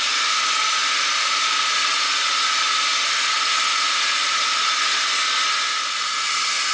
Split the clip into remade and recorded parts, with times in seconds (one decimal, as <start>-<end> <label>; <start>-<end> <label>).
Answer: 0.0-6.7 recorded